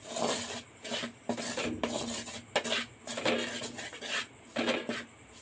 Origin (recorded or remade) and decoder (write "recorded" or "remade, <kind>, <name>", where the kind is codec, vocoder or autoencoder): recorded